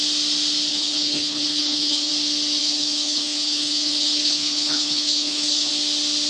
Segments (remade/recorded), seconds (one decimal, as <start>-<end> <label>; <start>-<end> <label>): 0.0-0.7 recorded; 0.7-2.1 remade; 2.1-2.6 recorded; 2.6-5.7 remade; 5.7-6.3 recorded